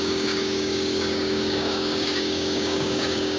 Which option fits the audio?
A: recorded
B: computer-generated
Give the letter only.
B